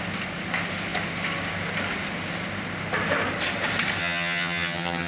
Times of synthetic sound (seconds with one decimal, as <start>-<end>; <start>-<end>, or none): 4.0-5.1